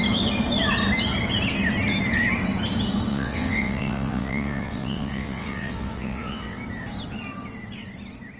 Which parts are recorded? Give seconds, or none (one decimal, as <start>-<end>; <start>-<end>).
0.0-3.1; 6.6-8.4